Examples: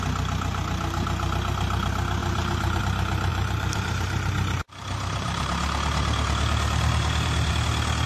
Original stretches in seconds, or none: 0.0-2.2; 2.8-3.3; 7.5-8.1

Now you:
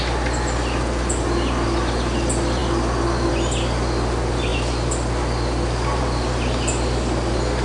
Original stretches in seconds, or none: 0.0-7.6

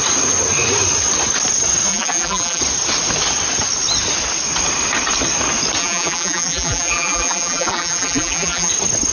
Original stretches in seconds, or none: 0.0-1.9; 2.6-5.8; 8.7-9.1

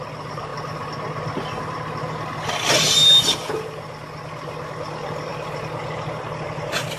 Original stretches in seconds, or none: 0.0-7.0

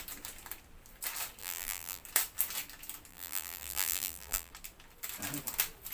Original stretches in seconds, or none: 0.0-1.4; 2.0-3.1; 4.5-5.9